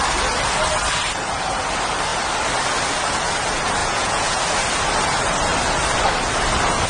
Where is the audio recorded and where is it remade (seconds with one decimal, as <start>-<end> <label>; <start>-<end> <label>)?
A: 0.0-3.8 recorded; 3.8-4.4 remade; 4.4-6.9 recorded